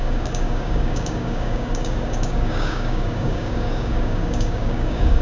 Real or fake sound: fake